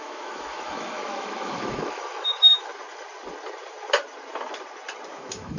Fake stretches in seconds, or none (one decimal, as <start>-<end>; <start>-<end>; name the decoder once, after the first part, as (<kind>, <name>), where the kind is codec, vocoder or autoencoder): 0.0-2.7 (autoencoder, DAC-VAE); 5.1-5.6